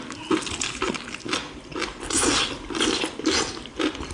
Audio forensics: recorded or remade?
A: recorded